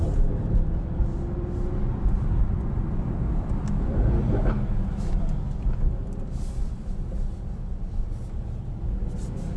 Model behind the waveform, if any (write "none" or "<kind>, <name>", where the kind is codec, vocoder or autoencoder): none